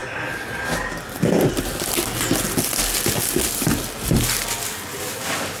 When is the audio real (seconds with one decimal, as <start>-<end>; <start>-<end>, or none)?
0.0-5.6

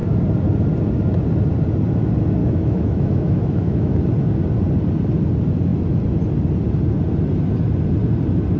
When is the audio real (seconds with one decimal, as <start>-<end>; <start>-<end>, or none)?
0.0-2.4; 4.0-8.6

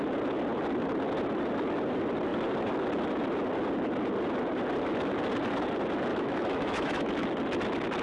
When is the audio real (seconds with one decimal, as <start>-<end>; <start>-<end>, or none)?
0.0-6.1; 7.1-8.0

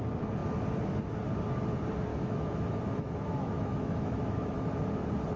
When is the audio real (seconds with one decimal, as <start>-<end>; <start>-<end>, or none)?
0.0-2.1; 4.8-5.4